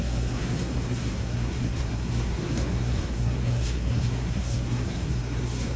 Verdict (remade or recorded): remade